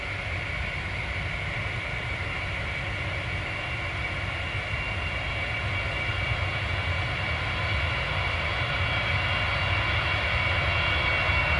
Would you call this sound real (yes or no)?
yes